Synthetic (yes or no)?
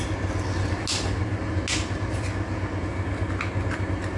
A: no